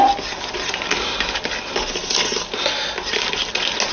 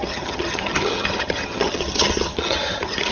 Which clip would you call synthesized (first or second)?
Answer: second